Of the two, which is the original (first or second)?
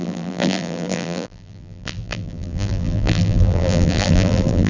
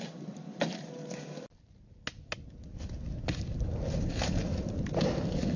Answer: second